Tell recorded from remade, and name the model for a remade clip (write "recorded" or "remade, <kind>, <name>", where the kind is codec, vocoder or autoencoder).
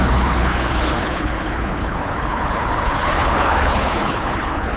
remade, codec, HILCodec